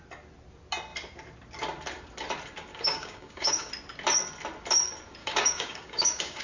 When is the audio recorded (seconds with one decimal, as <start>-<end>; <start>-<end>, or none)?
0.0-2.7; 3.7-5.2